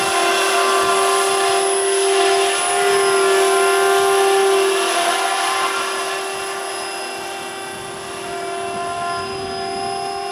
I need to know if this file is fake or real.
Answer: real